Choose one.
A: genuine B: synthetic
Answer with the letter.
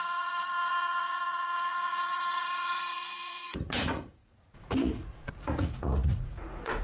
B